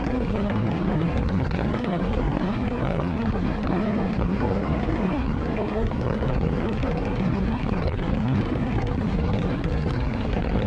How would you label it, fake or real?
fake